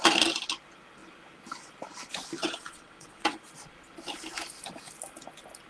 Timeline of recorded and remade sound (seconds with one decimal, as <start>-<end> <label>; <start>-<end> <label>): 0.0-2.4 recorded; 2.4-3.4 remade; 3.4-5.7 recorded